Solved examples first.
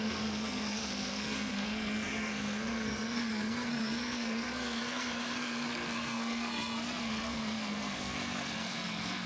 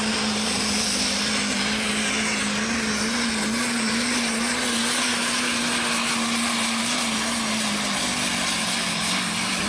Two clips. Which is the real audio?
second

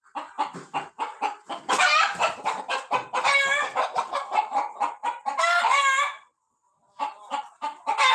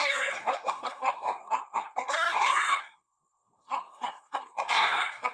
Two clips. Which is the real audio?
first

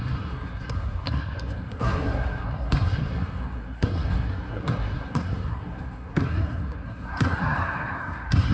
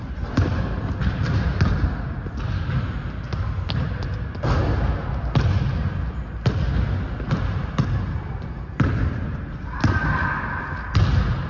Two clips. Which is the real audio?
second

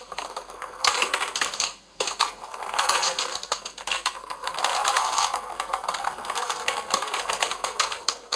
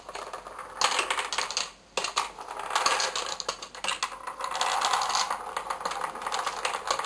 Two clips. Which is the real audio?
second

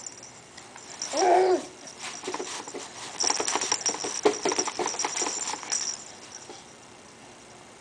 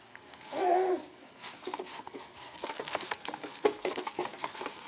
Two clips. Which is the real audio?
first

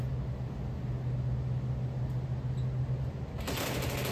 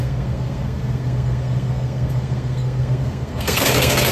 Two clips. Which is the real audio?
first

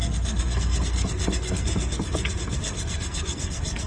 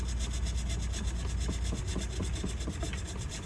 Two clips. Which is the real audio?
second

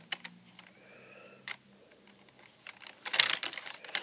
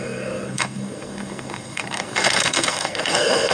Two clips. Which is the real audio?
first